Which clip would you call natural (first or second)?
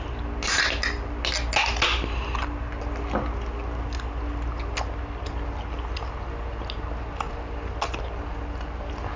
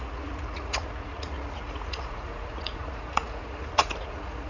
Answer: first